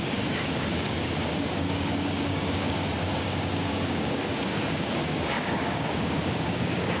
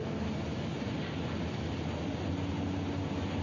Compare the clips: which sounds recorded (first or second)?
second